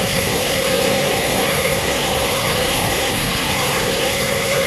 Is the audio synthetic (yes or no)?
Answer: yes